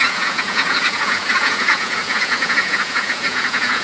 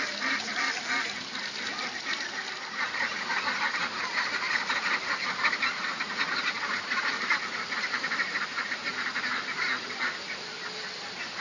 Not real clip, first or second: first